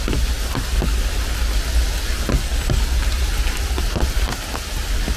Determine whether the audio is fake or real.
real